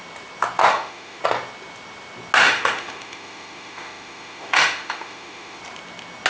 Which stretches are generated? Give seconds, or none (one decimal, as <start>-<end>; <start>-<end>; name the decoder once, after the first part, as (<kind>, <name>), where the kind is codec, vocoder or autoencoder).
0.7-1.2 (autoencoder, DAC-VAE); 2.4-5.6

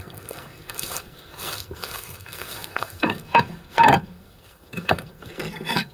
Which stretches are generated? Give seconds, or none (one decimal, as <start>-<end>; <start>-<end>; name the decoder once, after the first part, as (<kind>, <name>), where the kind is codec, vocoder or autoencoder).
0.0-5.9 (codec, SNAC)

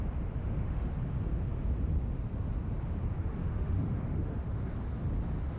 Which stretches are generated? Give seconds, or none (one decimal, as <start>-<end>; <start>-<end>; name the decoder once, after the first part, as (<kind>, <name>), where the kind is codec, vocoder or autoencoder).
0.4-1.0 (autoencoder, DAC-VAE); 3.4-4.5

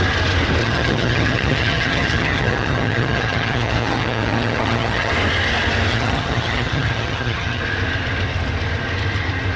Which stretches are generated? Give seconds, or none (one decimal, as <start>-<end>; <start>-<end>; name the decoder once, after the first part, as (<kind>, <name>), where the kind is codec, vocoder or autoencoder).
0.6-5.1 (vocoder, HiFi-GAN); 5.9-7.6